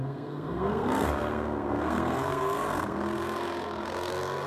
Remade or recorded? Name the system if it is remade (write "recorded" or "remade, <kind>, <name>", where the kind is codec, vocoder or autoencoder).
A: remade, codec, SNAC